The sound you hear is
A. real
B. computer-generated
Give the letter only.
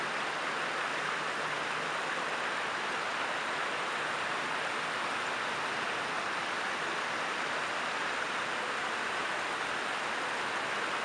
A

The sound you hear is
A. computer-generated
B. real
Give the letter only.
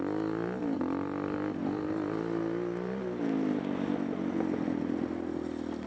B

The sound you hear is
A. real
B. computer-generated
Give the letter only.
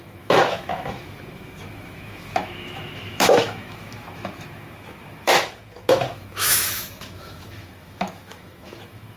B